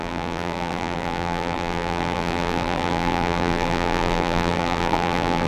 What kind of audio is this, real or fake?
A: fake